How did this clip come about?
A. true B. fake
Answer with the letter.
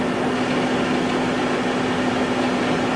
A